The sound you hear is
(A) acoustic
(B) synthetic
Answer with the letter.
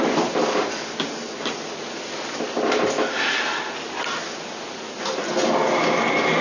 A